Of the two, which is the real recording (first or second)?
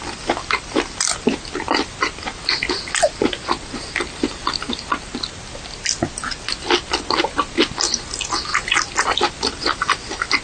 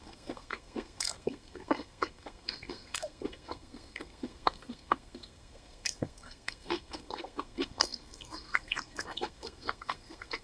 first